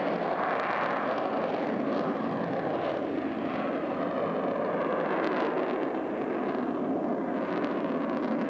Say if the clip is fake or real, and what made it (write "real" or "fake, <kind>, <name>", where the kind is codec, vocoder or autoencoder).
real